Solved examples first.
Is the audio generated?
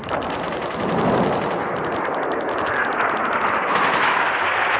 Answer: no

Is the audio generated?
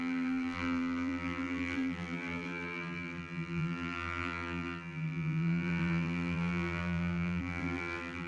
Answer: yes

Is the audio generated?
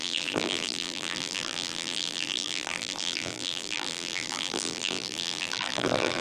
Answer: yes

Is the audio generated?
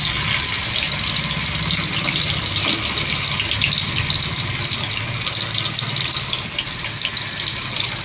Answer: no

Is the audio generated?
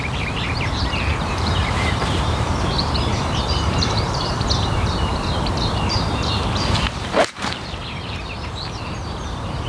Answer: yes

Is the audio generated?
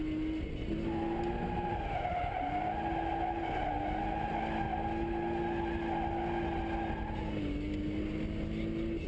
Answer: no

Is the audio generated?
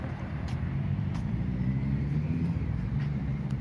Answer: yes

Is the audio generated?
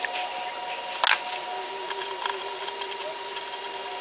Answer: no